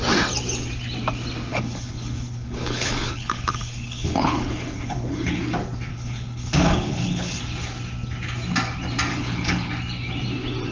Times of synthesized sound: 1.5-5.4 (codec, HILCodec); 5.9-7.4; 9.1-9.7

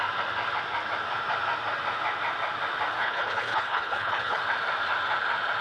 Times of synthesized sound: 3.0-4.4 (codec, HILCodec)

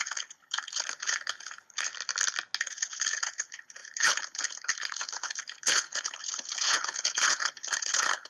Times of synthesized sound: 0.0-1.9 (codec, HILCodec); 2.6-8.3

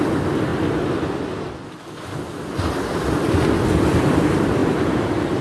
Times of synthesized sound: none

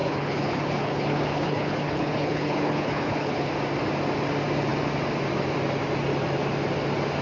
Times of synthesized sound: 0.0-3.5 (codec, HILCodec)

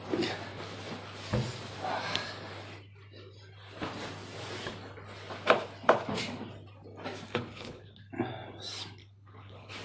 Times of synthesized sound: 7.3-8.0 (codec, HILCodec); 9.0-9.8

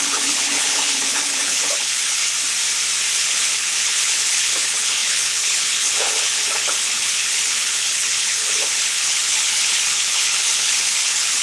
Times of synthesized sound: 0.0-2.2 (codec, HILCodec); 3.1-11.4